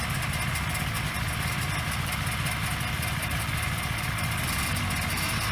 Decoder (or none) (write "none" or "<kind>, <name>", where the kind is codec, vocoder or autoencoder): none